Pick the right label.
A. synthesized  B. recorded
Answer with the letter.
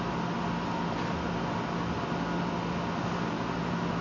B